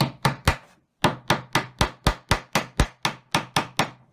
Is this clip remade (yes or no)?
no